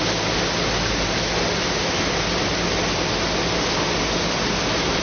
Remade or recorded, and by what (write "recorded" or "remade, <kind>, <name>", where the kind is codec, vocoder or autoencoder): recorded